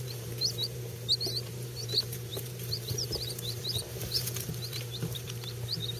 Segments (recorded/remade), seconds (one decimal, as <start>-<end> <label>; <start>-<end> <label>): 0.0-6.0 remade